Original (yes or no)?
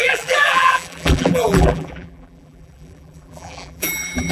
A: no